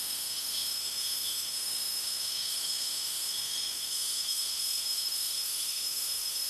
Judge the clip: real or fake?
fake